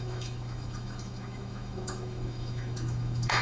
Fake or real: fake